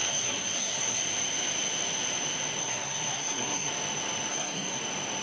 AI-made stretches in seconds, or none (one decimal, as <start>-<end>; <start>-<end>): 0.0-1.0; 2.6-3.7; 4.3-4.8